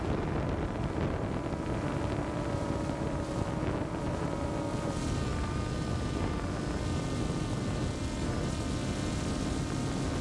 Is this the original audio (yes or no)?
yes